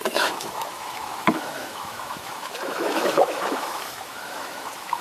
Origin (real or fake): fake